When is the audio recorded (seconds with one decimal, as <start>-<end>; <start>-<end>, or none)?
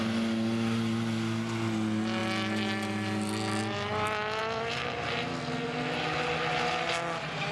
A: 0.0-7.5